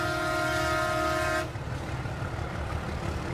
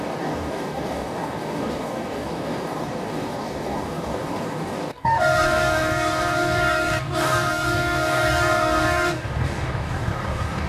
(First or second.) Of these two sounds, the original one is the first